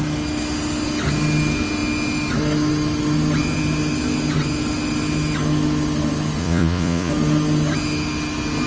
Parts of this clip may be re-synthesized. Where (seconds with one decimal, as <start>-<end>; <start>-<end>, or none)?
6.4-7.1